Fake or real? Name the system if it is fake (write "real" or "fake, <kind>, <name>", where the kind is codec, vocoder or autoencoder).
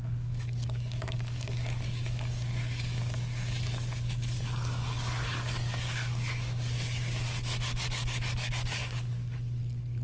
fake, codec, DAC